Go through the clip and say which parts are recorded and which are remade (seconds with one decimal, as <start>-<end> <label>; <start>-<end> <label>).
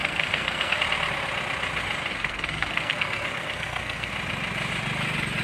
0.0-0.8 remade; 0.8-2.1 recorded; 2.1-4.1 remade; 4.1-5.4 recorded